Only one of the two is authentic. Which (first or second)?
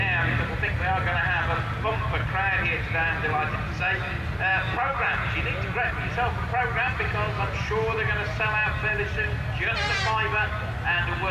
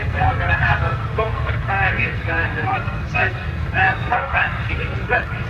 first